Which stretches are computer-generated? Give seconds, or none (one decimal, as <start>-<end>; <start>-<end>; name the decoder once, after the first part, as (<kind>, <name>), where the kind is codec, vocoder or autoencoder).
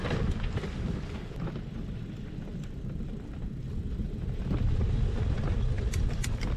2.5-3.5 (vocoder, BigVGAN v2)